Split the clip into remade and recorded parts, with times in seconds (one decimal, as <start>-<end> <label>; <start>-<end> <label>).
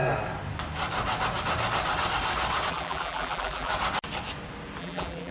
0.0-2.7 recorded; 2.7-3.7 remade; 3.7-4.8 recorded; 4.8-5.3 remade